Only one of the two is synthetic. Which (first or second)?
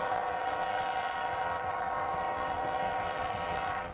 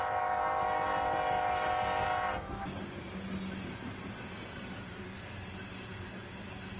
first